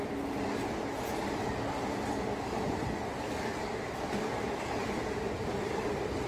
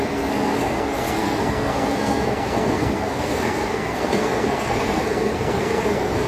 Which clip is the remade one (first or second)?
second